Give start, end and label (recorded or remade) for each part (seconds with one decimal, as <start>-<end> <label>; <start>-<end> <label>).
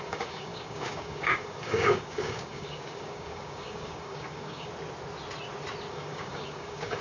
0.0-4.7 remade; 4.7-5.9 recorded; 5.9-7.0 remade